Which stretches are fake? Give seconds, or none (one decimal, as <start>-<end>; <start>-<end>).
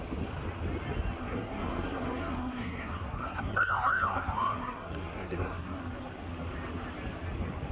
1.2-5.8